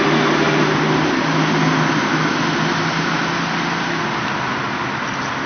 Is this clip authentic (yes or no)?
yes